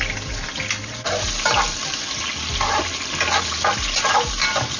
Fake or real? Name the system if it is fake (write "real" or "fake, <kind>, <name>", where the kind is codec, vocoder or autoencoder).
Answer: real